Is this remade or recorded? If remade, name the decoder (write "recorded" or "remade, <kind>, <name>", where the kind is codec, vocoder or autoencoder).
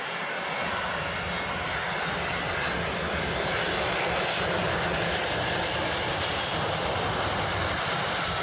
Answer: recorded